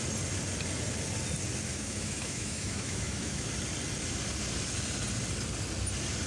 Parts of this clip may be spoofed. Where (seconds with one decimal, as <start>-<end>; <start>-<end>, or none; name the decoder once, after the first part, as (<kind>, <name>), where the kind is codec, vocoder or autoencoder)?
1.7-3.5 (autoencoder, DAC-VAE)